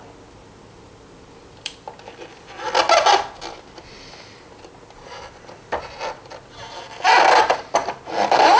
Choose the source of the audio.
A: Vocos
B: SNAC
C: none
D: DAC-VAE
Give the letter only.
C